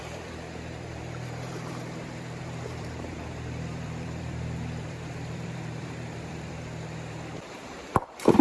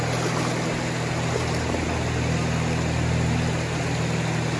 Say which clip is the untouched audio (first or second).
second